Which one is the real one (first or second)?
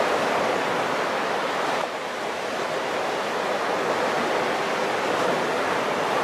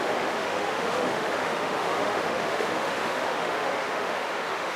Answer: first